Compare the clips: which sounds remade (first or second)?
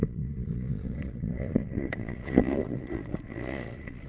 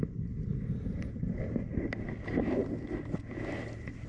first